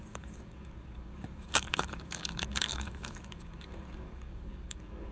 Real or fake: fake